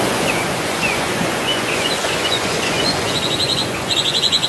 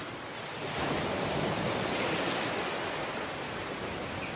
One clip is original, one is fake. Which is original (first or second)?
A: second